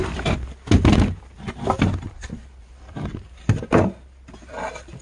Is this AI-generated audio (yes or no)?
no